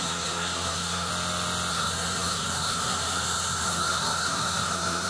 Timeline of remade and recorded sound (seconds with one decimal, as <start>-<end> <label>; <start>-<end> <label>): 0.0-1.1 remade; 1.1-1.7 recorded; 1.7-5.1 remade